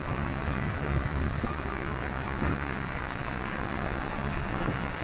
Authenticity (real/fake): fake